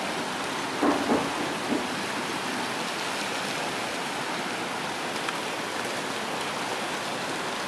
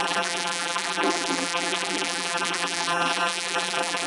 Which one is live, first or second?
first